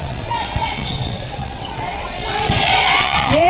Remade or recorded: remade